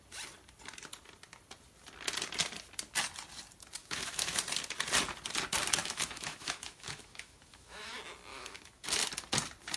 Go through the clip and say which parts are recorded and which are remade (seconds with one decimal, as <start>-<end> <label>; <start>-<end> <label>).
0.0-3.8 recorded; 3.8-4.4 remade; 4.4-5.8 recorded; 5.8-7.9 remade; 7.9-8.3 recorded; 8.3-8.8 remade; 8.8-9.8 recorded

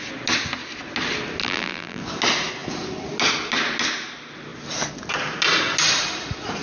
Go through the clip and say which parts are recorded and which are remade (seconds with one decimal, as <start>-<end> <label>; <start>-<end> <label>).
0.0-1.4 recorded; 1.4-2.0 remade; 2.0-6.6 recorded

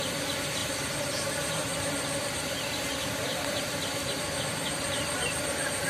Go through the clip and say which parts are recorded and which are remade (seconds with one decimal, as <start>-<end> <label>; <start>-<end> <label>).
0.0-5.9 recorded

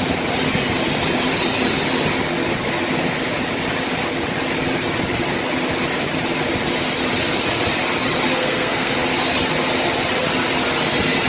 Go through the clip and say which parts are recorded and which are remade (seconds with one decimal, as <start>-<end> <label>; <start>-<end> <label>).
0.0-8.3 recorded; 8.3-8.9 remade; 8.9-11.3 recorded

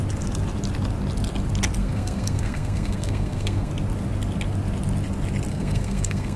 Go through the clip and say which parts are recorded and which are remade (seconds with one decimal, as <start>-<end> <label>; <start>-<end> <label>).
0.0-1.8 recorded; 1.8-3.7 remade; 3.7-5.5 recorded; 5.5-6.4 remade

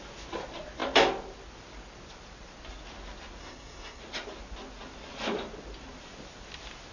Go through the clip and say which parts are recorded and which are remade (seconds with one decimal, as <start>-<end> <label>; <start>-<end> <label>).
0.0-3.4 recorded; 3.4-4.0 remade; 4.0-6.9 recorded